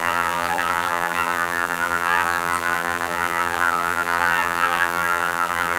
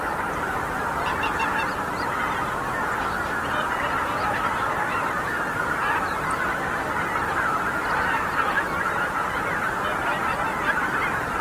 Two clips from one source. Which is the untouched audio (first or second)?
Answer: second